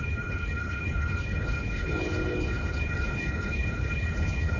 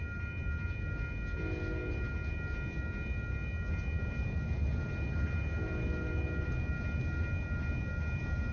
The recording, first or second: second